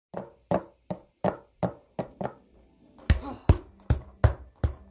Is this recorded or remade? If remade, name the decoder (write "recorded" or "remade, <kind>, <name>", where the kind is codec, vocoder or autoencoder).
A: recorded